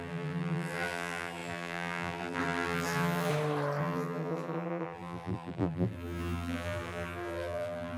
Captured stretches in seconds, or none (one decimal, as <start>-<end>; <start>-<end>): 3.3-3.8